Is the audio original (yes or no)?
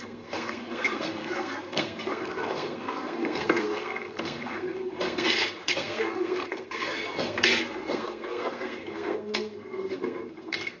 no